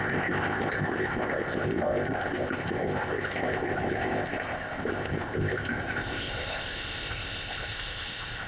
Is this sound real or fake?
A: fake